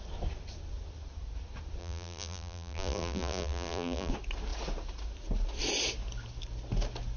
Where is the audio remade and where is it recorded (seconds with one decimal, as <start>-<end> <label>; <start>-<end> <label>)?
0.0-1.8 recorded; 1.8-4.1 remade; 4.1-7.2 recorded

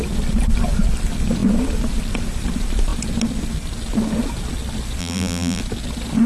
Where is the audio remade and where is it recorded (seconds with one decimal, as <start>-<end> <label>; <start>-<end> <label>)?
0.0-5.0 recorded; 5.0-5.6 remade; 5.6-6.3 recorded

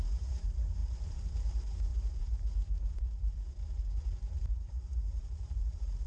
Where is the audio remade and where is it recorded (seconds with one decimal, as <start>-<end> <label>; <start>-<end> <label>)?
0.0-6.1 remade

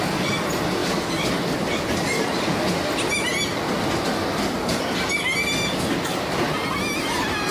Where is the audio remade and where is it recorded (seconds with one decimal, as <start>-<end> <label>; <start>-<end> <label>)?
0.0-0.8 recorded; 0.8-1.5 remade; 1.5-7.5 recorded

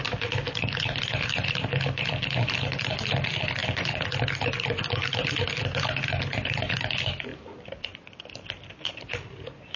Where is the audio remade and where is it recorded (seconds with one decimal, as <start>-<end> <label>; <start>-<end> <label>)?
0.0-7.3 recorded; 7.3-8.2 remade; 8.2-9.8 recorded

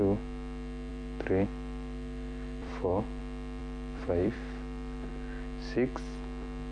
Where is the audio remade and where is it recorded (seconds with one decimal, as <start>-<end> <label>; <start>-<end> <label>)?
0.0-0.9 recorded; 0.9-3.2 remade; 3.2-3.6 recorded; 3.6-5.1 remade; 5.1-6.7 recorded

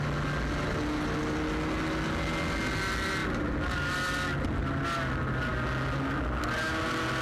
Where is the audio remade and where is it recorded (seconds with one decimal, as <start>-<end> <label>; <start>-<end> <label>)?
0.0-7.2 recorded

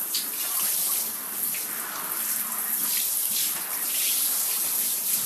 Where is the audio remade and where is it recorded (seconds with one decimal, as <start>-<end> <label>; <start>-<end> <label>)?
0.0-1.2 remade; 1.2-2.6 recorded; 2.6-5.3 remade